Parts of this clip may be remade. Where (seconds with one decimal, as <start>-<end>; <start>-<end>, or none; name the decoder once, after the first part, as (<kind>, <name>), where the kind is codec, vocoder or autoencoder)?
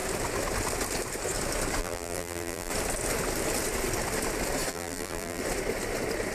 1.8-2.7 (vocoder, BigVGAN v2); 4.7-5.4